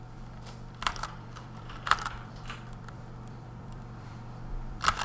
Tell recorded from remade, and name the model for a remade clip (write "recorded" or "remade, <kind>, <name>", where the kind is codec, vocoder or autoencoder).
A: remade, vocoder, BigVGAN v2